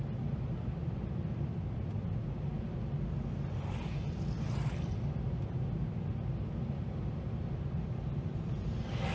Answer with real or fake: real